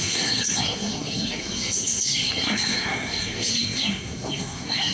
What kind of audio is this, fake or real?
fake